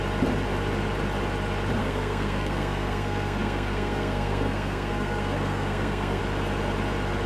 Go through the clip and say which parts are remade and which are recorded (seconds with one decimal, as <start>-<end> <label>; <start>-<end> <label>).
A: 0.0-1.8 recorded; 1.8-6.2 remade; 6.2-7.3 recorded